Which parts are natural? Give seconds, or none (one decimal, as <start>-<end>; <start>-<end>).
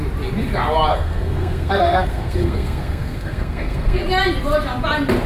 0.0-0.9; 4.0-5.3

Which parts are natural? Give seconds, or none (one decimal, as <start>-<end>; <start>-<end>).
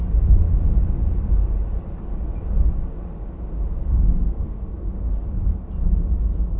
0.0-3.8; 4.6-6.6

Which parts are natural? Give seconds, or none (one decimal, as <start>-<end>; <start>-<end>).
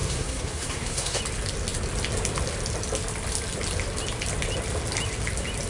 1.2-5.7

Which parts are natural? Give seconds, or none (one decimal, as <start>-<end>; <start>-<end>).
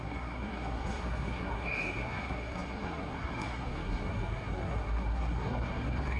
none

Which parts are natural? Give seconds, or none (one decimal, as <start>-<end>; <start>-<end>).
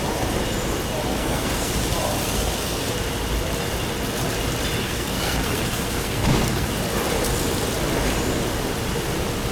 0.0-1.1; 1.7-2.2; 2.9-4.8; 6.7-9.5